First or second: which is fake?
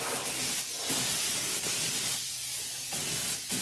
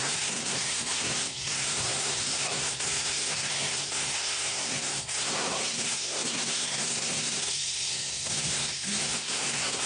second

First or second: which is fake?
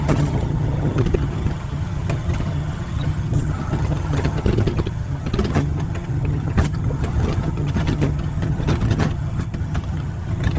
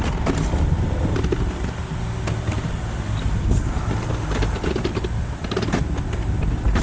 first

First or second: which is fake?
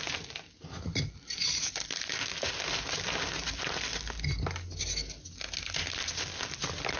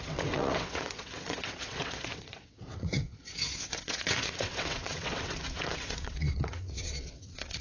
second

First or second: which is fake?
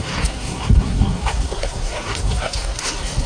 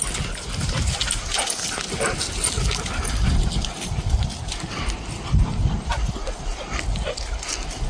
first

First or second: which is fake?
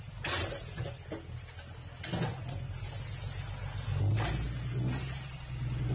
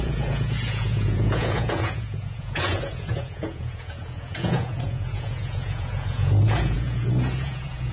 second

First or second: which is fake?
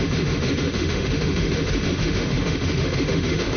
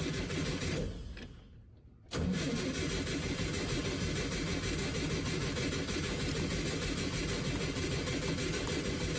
first